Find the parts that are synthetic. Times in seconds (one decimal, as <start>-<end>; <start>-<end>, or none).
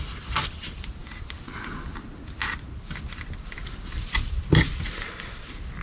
none